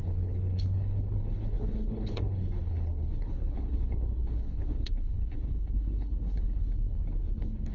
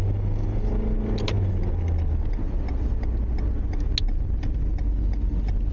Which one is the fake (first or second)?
first